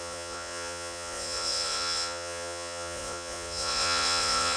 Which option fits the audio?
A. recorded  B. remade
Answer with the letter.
B